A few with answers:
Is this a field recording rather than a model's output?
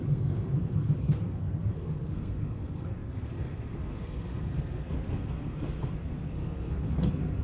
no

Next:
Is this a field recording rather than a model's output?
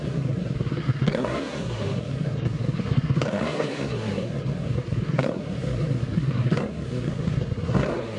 no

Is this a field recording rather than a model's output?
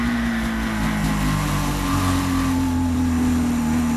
yes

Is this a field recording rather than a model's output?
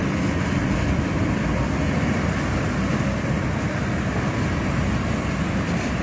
yes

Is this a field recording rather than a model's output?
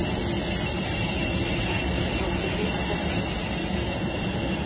yes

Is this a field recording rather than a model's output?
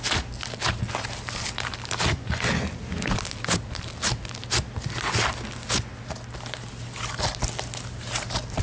yes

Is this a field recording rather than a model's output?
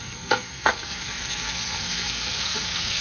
no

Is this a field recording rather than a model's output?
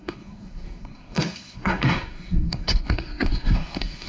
no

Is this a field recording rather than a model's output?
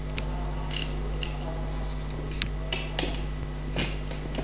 yes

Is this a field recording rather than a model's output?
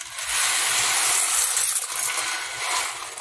yes